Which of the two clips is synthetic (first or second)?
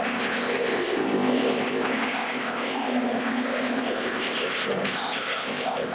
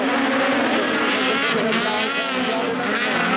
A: first